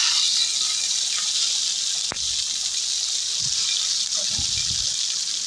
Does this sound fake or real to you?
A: real